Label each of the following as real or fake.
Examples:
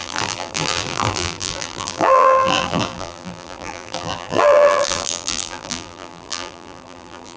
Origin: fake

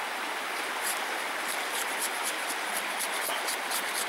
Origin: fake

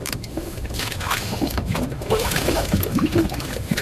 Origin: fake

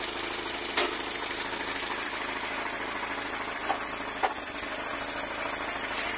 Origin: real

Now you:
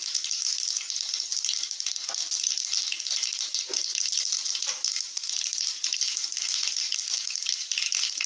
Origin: real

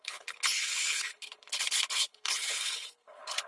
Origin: fake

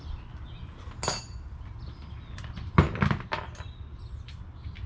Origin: real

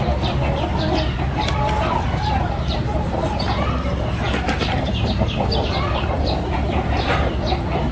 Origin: real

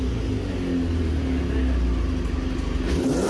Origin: real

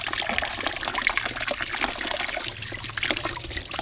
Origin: real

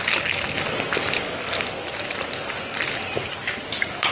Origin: real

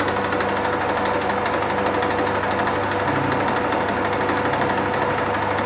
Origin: real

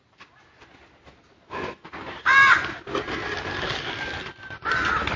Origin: real